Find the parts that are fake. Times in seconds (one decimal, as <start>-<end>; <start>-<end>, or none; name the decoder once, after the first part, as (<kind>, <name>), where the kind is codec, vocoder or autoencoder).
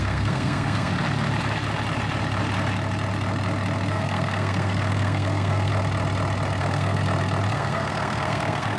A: 0.0-0.9 (codec, SNAC); 3.9-5.7; 6.6-7.0; 7.5-8.8